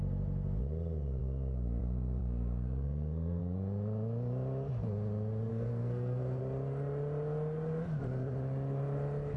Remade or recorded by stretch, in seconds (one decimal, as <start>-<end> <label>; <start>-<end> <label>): 0.0-1.2 recorded; 1.2-1.8 remade; 1.8-2.2 recorded; 2.2-3.4 remade; 3.4-5.5 recorded; 5.5-6.4 remade; 6.4-9.4 recorded